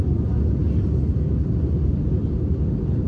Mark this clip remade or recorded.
remade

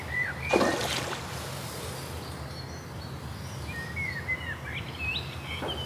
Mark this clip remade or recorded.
recorded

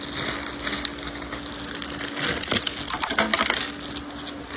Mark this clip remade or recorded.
recorded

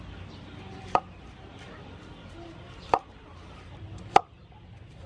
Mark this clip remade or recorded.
remade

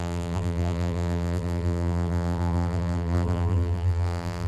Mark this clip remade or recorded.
remade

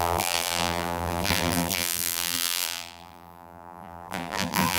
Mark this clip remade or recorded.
remade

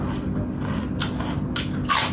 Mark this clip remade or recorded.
recorded